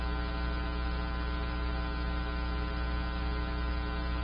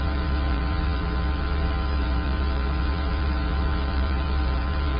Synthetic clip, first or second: second